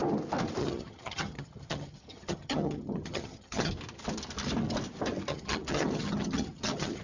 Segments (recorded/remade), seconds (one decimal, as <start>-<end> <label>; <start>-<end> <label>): 0.0-0.6 recorded; 0.6-3.7 remade; 3.7-5.3 recorded; 5.3-7.0 remade